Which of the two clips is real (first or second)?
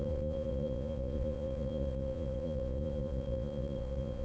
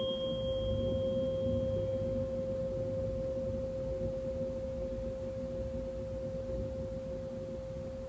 second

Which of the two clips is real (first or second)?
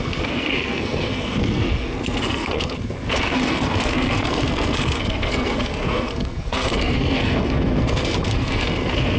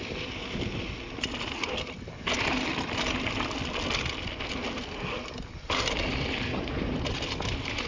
second